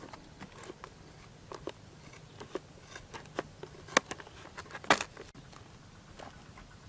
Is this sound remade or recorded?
recorded